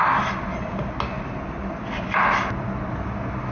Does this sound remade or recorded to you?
recorded